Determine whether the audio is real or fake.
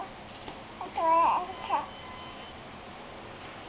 real